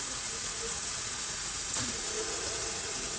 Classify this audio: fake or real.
fake